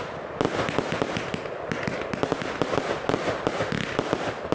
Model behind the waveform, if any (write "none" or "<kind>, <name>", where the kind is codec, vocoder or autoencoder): none